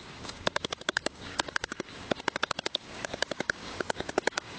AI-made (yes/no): yes